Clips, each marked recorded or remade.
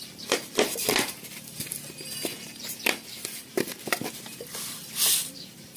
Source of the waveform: remade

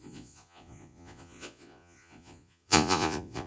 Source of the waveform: remade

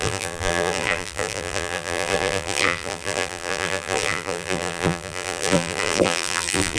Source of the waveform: remade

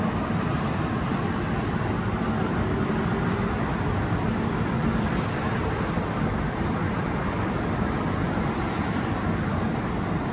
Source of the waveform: remade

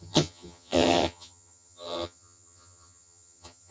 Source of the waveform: remade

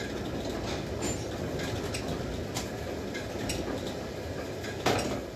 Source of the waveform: recorded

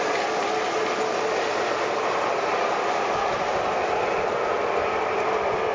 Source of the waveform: recorded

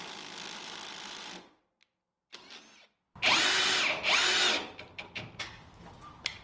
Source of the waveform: recorded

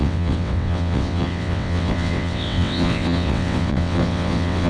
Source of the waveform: remade